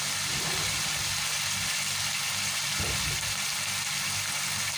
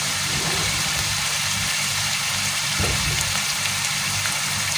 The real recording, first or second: first